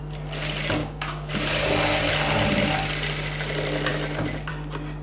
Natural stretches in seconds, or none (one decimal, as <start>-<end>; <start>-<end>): 0.0-0.8; 1.3-5.0